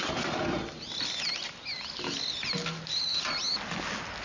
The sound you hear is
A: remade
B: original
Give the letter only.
B